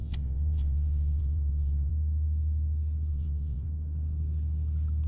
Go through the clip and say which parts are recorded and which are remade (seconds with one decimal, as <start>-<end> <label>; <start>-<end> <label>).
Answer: 0.0-1.9 remade; 1.9-3.1 recorded; 3.1-3.7 remade; 3.7-5.1 recorded